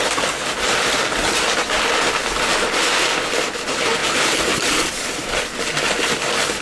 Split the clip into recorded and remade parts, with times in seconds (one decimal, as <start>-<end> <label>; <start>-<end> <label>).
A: 0.0-2.5 recorded; 2.5-3.3 remade; 3.3-4.0 recorded; 4.0-5.4 remade; 5.4-6.6 recorded